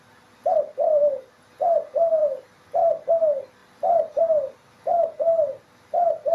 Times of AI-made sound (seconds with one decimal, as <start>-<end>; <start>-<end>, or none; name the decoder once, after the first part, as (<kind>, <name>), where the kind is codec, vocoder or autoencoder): none